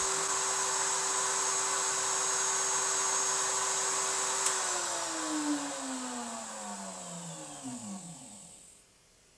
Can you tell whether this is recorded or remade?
recorded